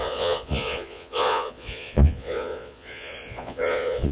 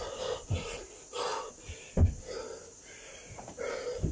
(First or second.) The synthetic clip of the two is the first